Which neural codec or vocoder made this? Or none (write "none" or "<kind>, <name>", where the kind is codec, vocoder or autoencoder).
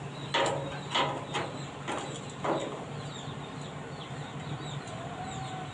none